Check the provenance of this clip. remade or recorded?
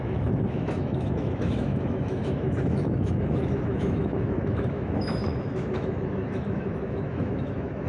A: remade